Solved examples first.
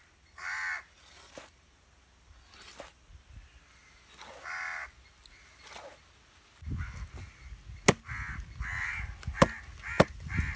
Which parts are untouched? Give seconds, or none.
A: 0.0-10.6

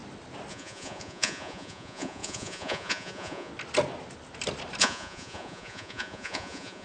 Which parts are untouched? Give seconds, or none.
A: 0.0-0.5; 3.5-4.8

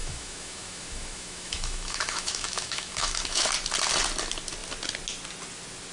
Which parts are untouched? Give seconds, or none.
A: 3.5-5.9

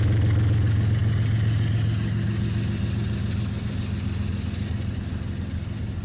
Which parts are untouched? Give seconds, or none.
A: 0.0-6.0

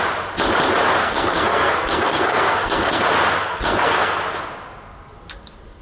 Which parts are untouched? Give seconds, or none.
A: 0.0-1.0; 3.0-3.4; 4.2-5.8

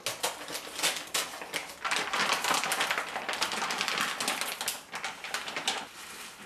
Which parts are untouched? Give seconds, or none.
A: 0.0-6.5

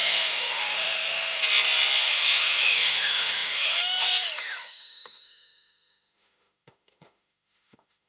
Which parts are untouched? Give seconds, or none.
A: 1.4-2.0